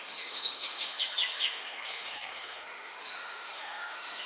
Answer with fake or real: fake